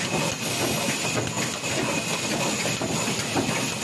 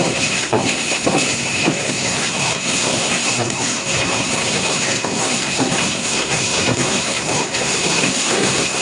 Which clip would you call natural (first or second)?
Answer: first